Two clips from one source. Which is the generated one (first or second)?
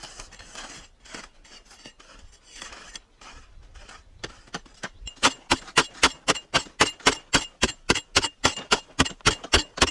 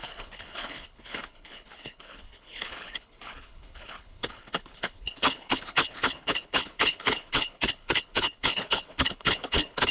second